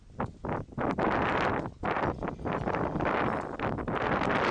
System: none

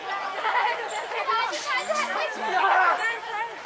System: none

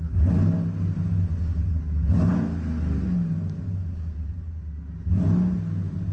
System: none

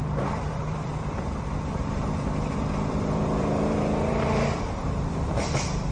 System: vocoder, BigVGAN v2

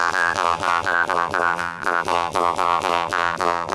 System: vocoder, BigVGAN v2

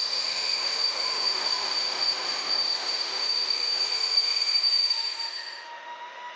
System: autoencoder, DAC-VAE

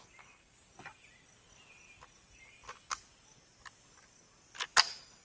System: vocoder, BigVGAN v2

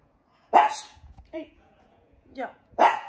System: vocoder, Vocos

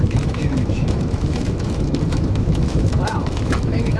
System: autoencoder, DAC-VAE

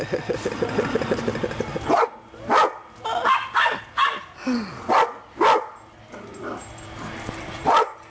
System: none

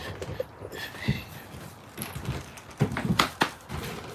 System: vocoder, BigVGAN v2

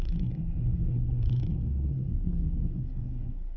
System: codec, SNAC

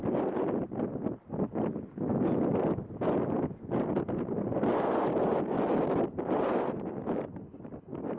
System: none